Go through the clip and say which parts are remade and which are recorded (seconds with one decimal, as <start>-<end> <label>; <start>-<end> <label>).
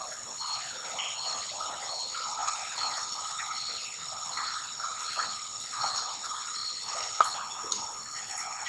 0.0-8.7 remade